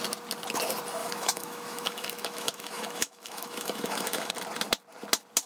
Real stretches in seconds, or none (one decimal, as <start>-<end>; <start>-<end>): 0.0-1.0; 4.3-5.5

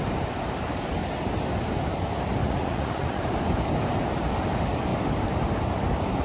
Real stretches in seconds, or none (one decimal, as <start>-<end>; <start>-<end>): 0.0-2.4; 3.2-6.2

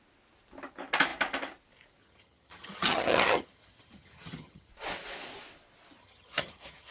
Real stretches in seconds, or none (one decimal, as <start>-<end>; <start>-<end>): 0.0-2.0; 4.7-6.0

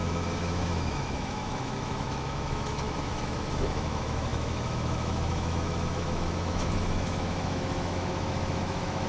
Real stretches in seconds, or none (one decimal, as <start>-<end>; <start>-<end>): none

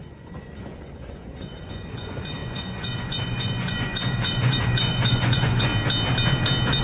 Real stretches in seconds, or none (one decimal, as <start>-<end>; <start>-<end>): 5.7-6.8

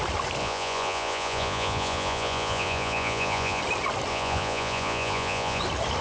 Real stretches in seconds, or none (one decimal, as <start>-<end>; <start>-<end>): 0.0-0.4; 3.6-4.1; 5.6-6.0

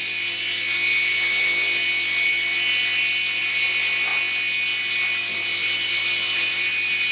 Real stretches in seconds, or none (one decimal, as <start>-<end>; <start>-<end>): 0.0-3.4; 4.1-4.9